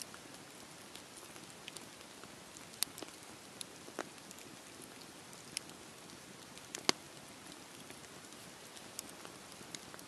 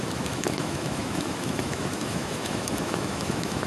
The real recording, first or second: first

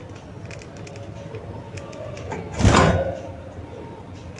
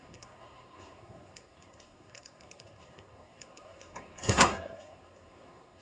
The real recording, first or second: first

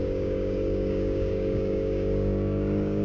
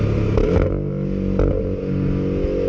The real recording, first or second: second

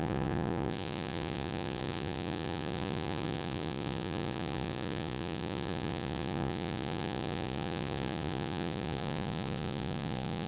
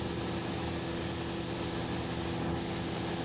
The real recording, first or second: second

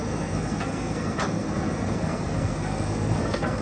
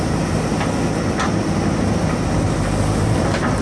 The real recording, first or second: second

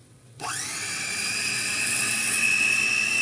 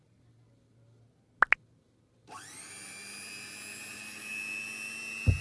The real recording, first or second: second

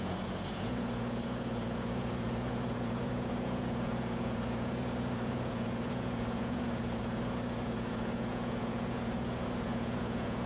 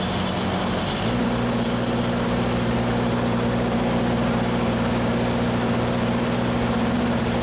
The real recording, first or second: second